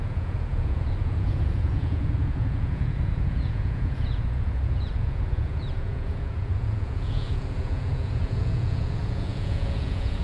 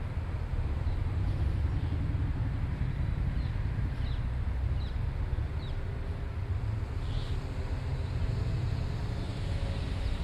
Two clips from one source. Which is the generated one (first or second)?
first